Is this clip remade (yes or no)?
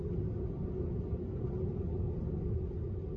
no